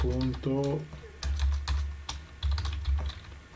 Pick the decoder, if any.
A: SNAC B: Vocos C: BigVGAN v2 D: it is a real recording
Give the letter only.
D